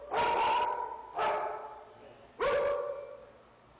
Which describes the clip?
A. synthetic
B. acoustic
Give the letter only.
B